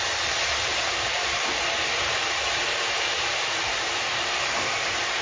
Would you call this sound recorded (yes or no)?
no